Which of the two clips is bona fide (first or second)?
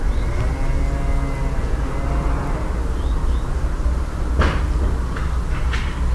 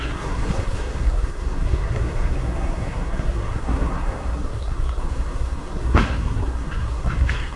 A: first